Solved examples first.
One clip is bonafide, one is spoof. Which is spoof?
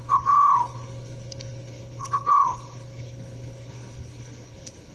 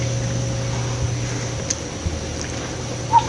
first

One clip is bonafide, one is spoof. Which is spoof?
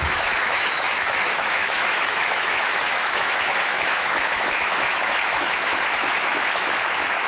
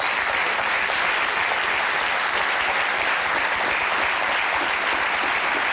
first